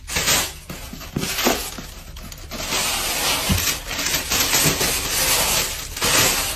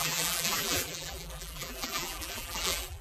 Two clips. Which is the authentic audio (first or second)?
first